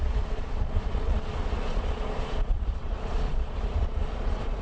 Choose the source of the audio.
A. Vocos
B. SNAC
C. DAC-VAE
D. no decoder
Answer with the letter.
A